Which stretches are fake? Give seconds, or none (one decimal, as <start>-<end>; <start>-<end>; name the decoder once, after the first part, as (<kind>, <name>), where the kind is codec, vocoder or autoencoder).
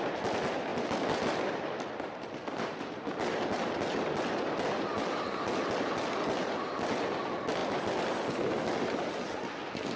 none